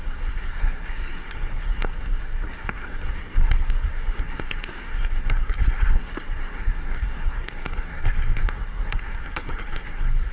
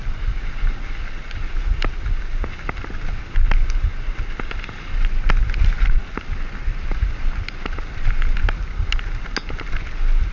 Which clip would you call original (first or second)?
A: second